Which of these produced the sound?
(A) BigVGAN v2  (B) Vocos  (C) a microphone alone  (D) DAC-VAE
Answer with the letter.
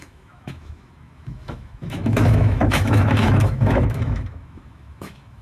D